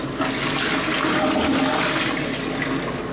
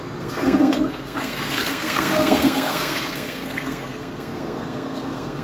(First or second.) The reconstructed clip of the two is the second